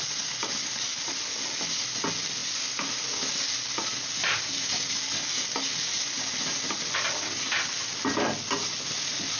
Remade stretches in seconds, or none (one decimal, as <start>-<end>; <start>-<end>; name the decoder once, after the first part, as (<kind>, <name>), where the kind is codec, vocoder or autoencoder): 2.4-3.0 (vocoder, BigVGAN v2)